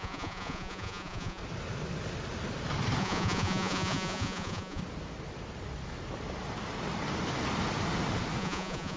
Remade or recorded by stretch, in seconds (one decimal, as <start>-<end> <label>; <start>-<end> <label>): 0.0-1.4 remade; 1.4-3.0 recorded; 3.0-4.8 remade; 4.8-8.4 recorded; 8.4-9.0 remade